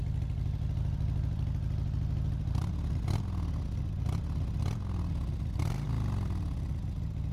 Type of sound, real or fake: real